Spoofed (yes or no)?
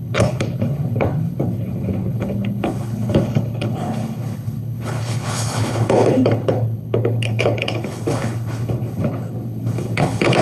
yes